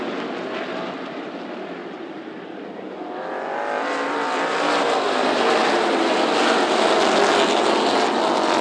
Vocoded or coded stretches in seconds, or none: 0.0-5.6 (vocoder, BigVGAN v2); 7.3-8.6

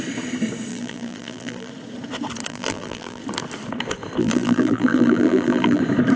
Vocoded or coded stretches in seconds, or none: 0.7-1.7 (vocoder, BigVGAN v2); 2.5-3.2; 4.2-5.8

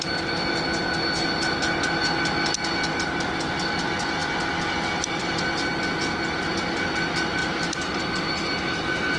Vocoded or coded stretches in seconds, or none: 7.4-8.0 (vocoder, BigVGAN v2)

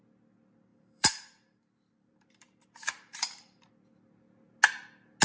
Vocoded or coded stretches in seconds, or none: 0.7-3.7 (vocoder, BigVGAN v2)